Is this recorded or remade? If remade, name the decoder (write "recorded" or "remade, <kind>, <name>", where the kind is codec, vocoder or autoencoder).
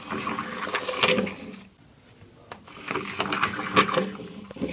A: recorded